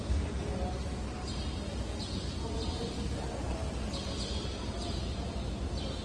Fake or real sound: real